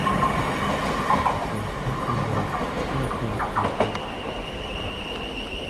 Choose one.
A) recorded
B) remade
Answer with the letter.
A